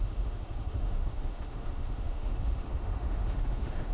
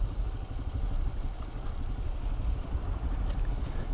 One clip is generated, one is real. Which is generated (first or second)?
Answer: first